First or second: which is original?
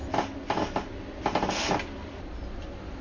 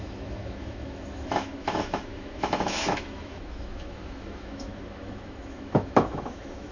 first